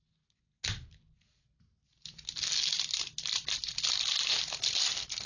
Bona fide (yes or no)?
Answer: yes